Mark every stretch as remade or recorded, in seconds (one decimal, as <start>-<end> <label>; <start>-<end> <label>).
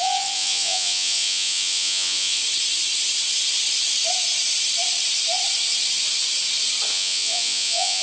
0.0-2.4 remade; 2.4-6.9 recorded; 6.9-8.0 remade